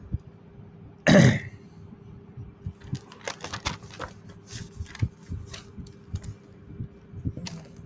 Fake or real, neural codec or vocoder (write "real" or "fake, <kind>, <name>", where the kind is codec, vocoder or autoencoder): real